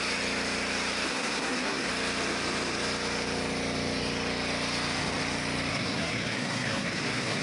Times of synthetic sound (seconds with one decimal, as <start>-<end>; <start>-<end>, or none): 1.1-1.9; 5.7-7.4